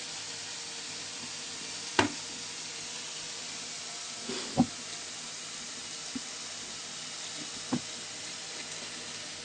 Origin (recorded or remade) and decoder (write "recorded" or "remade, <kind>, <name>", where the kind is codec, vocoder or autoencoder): recorded